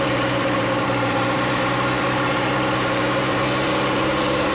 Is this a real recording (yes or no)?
no